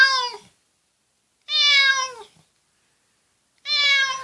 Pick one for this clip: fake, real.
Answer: real